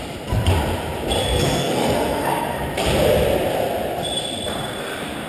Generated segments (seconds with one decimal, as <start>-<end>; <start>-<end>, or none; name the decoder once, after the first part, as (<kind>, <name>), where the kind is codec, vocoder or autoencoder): 1.2-2.6 (codec, SNAC)